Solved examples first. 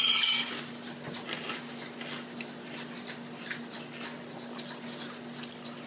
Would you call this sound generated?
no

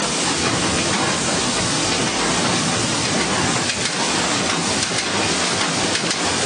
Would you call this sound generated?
no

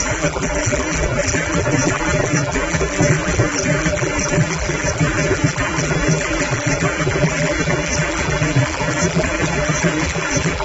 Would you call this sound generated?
yes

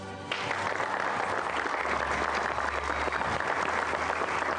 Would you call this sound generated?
no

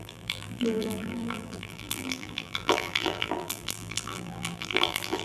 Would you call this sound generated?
yes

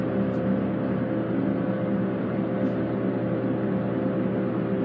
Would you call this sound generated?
no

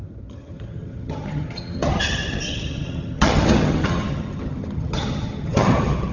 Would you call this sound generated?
yes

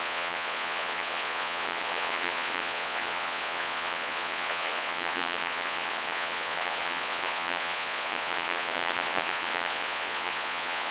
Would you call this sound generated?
yes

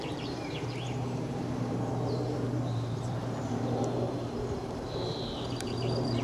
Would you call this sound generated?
yes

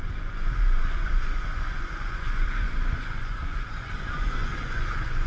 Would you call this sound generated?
yes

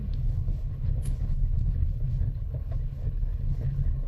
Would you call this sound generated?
yes